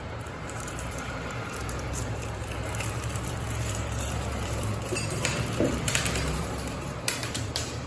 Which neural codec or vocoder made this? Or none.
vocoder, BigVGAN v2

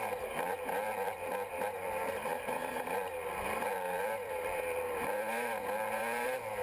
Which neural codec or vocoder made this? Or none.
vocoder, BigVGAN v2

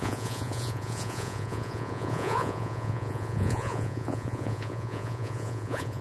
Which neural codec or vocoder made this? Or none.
vocoder, Vocos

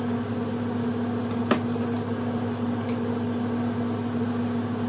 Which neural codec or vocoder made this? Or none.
none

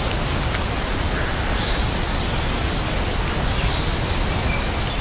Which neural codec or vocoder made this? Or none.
none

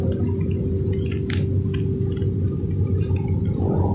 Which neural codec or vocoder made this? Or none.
none